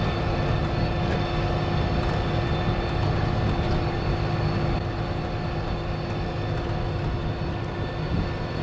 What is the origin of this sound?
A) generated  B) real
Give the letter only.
B